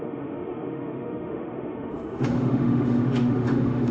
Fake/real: fake